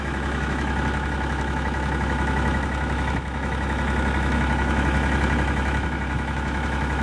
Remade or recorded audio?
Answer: remade